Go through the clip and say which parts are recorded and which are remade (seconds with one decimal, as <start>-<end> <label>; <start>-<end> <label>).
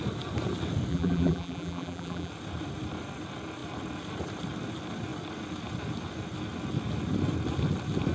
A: 0.0-0.9 recorded; 0.9-2.3 remade; 2.3-8.1 recorded